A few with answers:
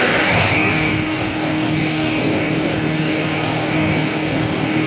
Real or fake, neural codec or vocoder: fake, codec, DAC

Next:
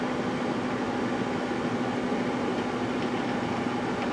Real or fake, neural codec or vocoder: real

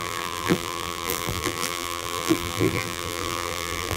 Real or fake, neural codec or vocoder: fake, vocoder, BigVGAN v2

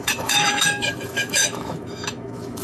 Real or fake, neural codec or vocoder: fake, autoencoder, DAC-VAE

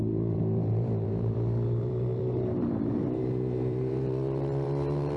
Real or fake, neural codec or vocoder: fake, vocoder, BigVGAN v2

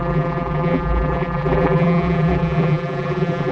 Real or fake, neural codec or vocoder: fake, vocoder, BigVGAN v2